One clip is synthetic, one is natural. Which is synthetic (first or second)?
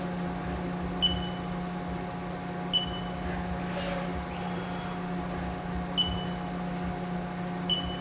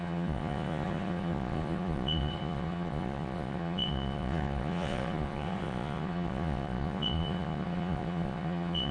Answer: second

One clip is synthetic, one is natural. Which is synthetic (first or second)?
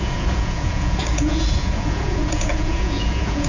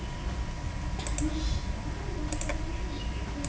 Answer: first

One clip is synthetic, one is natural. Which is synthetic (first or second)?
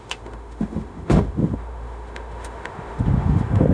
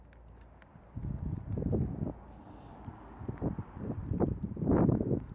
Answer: first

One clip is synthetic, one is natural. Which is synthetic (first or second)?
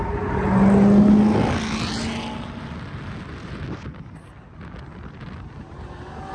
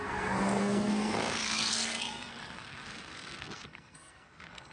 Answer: second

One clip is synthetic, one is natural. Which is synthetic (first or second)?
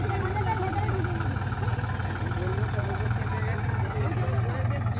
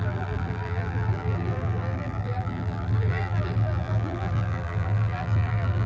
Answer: second